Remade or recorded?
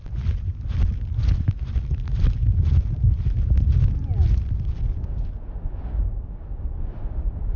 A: recorded